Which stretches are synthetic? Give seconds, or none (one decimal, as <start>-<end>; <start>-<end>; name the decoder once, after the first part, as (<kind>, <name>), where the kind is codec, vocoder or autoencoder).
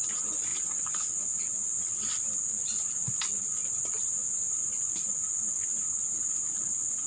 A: none